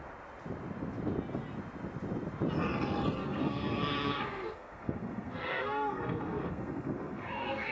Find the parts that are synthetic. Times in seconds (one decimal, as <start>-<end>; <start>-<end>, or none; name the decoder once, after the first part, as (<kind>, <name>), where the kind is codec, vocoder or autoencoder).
3.2-7.7 (codec, SNAC)